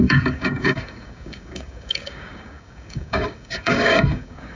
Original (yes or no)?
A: no